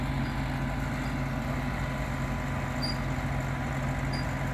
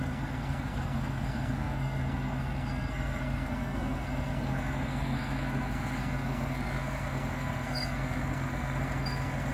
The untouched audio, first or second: first